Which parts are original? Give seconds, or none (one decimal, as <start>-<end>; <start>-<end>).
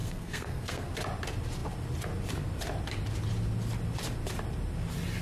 0.9-5.2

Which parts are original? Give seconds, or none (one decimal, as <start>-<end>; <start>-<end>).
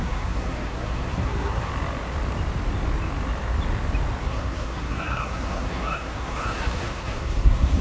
1.7-4.2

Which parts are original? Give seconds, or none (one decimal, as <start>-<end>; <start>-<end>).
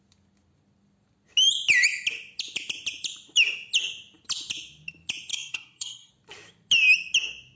0.0-5.3; 6.1-7.6